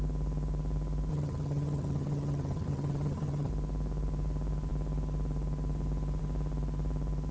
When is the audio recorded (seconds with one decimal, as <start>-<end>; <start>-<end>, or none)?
0.0-1.1; 3.5-7.3